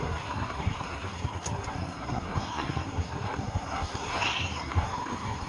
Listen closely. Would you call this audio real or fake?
fake